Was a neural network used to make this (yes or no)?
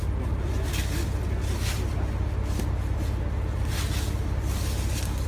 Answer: no